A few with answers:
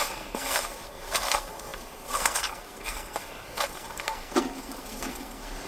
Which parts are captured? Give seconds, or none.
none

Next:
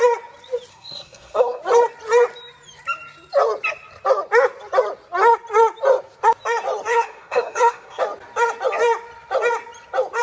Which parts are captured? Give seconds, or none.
0.0-0.7; 1.6-6.9; 8.0-10.2

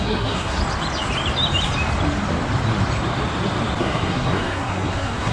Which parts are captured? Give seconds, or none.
0.6-3.8